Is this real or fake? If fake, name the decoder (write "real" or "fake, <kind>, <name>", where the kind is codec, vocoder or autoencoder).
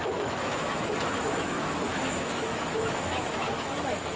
fake, autoencoder, DAC-VAE